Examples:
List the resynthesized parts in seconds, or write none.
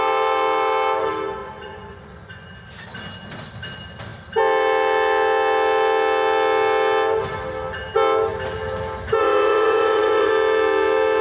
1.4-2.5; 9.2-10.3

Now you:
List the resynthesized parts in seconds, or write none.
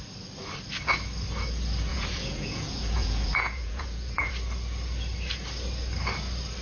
1.9-4.3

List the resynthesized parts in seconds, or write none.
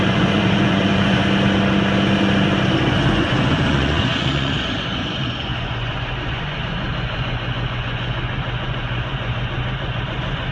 0.0-1.2; 2.9-10.5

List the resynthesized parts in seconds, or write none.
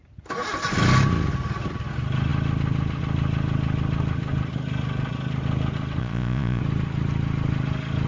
6.0-6.6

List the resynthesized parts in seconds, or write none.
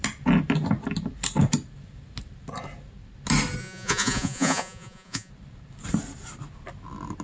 3.6-5.3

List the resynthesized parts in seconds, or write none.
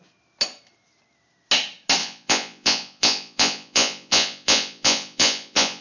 2.0-5.8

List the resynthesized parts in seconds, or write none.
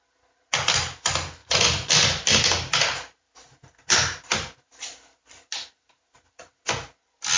1.4-1.9